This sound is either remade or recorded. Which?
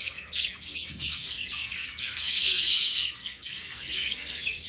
remade